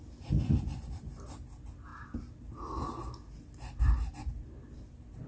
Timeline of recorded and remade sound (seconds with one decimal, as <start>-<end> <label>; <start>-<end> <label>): 0.0-5.3 recorded